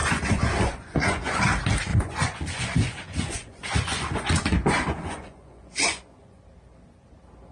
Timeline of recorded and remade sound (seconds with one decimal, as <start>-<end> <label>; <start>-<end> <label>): 0.0-1.4 remade; 1.4-1.9 recorded; 1.9-6.4 remade; 6.4-7.5 recorded